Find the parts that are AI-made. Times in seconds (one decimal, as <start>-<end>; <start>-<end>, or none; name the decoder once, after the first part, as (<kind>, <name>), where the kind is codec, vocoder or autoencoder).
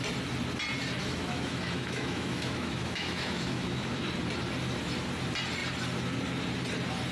1.0-4.0 (autoencoder, DAC-VAE)